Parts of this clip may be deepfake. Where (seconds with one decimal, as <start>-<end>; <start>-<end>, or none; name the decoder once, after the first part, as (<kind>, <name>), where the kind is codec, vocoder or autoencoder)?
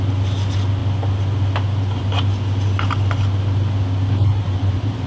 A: none